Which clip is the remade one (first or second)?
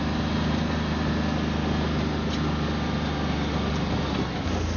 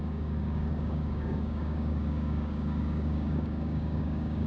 second